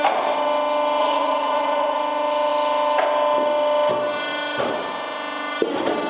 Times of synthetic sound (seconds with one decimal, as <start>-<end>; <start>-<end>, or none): 1.0-2.0